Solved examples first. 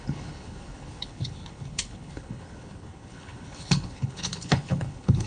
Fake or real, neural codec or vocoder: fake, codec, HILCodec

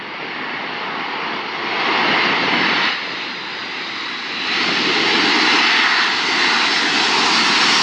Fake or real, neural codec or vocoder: real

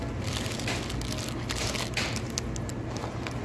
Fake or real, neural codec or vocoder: real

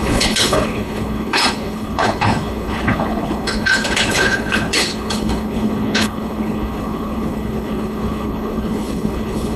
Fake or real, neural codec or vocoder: fake, codec, HILCodec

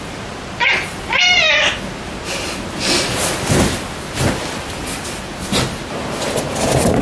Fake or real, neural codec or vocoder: real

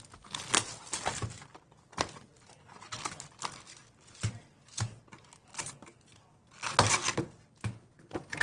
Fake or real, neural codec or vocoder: real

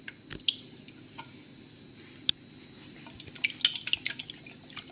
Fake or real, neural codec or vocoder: real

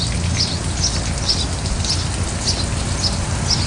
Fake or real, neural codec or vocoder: real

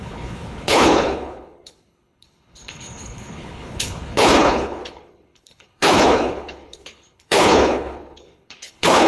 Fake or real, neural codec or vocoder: fake, codec, HILCodec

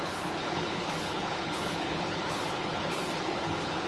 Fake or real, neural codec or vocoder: fake, codec, HILCodec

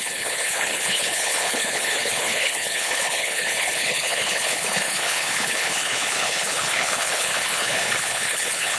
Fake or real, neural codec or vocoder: fake, codec, HILCodec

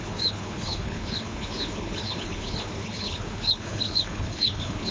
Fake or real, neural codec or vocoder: fake, codec, HILCodec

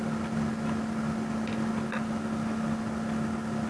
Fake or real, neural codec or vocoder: real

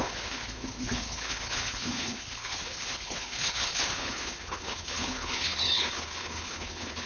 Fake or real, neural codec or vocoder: fake, codec, HILCodec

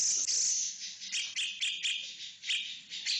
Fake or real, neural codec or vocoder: real